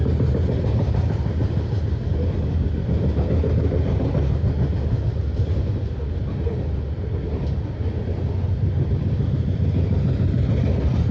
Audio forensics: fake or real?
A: real